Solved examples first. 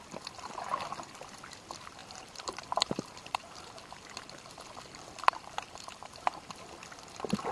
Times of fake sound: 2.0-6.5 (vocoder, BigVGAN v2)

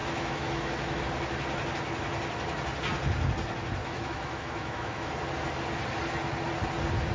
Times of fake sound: 0.0-1.0 (autoencoder, DAC-VAE); 3.8-5.1

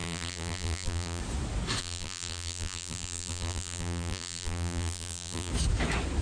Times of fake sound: 0.0-1.2 (vocoder, BigVGAN v2); 1.8-5.5

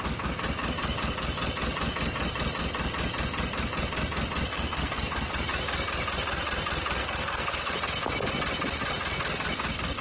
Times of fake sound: 4.5-5.3 (codec, SNAC); 7.0-7.7

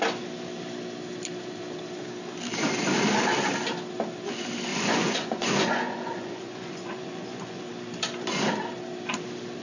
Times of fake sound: 4.7-7.6 (vocoder, Vocos)